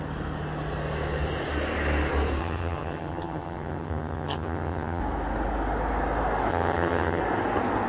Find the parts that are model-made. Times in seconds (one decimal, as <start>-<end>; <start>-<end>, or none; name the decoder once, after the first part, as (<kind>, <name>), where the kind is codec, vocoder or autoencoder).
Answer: 2.4-5.0 (vocoder, HiFi-GAN); 6.5-7.2